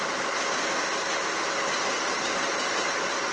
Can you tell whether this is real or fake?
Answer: real